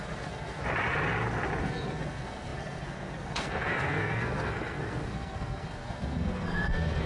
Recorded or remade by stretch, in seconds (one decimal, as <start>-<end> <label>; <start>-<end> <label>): 0.0-0.6 remade; 0.6-1.6 recorded; 1.6-7.1 remade